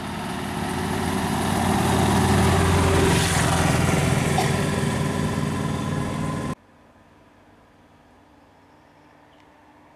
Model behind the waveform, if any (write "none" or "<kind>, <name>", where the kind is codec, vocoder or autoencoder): none